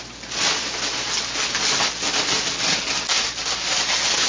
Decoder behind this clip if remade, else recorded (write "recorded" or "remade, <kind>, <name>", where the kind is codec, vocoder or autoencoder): recorded